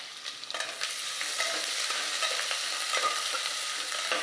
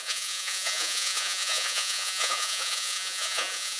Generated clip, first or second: second